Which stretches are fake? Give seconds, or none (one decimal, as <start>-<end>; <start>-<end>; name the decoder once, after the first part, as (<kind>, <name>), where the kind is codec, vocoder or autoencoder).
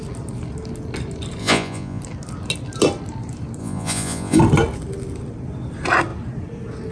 1.4-2.0 (vocoder, Vocos); 3.6-4.4